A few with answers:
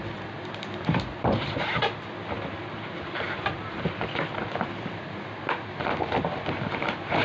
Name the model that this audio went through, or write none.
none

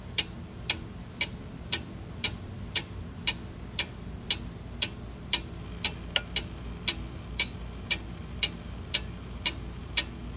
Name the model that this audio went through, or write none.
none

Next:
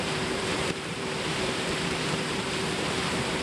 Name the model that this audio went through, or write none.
vocoder, BigVGAN v2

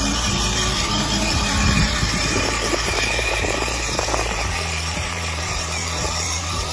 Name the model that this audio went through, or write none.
vocoder, BigVGAN v2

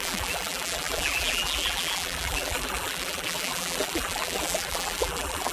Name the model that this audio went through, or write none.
vocoder, BigVGAN v2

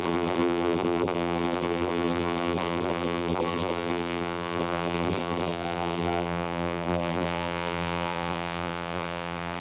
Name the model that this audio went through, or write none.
vocoder, BigVGAN v2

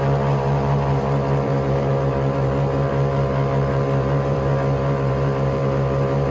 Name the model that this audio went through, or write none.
vocoder, BigVGAN v2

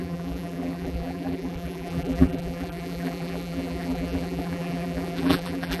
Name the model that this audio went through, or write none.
vocoder, BigVGAN v2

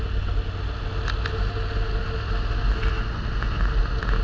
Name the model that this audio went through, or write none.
none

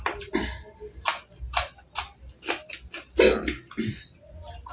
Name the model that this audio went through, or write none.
none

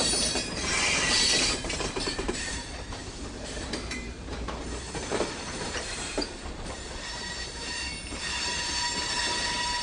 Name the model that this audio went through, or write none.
vocoder, BigVGAN v2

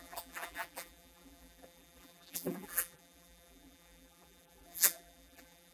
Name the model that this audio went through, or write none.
vocoder, BigVGAN v2